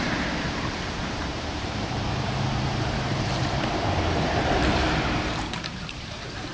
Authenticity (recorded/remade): remade